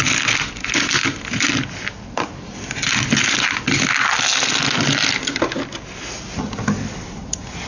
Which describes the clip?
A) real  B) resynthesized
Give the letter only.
A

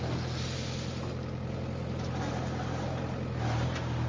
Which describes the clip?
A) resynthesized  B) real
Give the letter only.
B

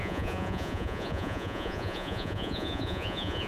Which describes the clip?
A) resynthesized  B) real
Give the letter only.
A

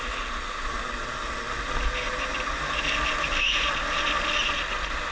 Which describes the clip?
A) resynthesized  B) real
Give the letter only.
B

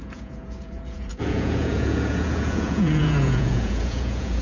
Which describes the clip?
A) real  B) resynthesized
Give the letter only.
B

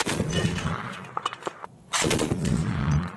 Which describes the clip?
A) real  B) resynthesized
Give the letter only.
B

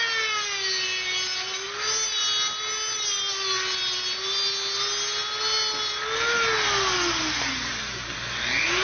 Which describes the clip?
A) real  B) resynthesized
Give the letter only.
A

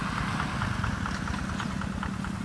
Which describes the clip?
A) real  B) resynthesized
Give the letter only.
A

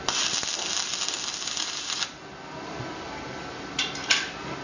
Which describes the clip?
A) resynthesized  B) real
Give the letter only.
B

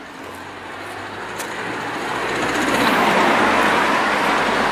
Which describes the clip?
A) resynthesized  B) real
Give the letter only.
B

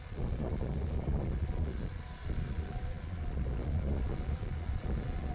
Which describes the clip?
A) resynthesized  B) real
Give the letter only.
A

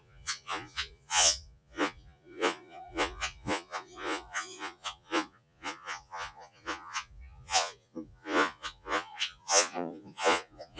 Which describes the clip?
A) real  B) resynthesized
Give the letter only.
B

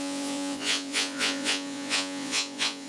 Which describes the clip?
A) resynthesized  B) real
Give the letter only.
A